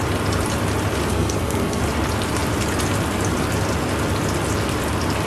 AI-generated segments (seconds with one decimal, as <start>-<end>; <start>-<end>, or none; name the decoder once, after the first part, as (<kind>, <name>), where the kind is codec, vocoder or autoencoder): 1.1-1.8 (codec, SNAC)